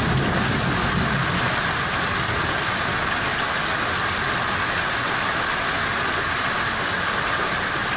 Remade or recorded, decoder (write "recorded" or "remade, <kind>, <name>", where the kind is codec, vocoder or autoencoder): recorded